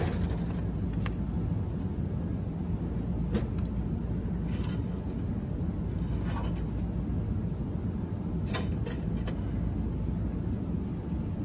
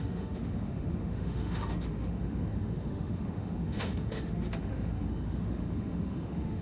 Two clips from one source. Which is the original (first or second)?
first